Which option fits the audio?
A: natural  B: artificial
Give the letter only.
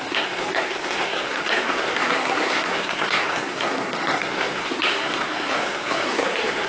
B